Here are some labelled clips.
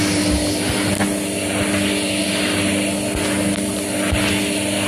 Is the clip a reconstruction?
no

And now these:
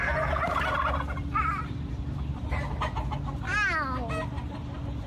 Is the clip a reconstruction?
no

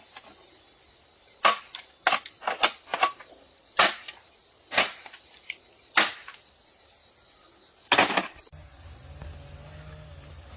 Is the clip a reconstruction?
no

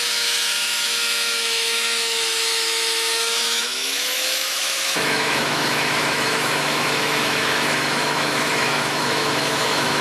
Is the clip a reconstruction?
yes